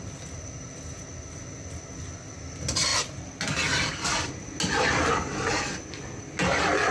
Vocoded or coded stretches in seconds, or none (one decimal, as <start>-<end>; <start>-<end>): none